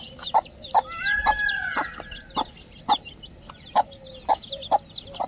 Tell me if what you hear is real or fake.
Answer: real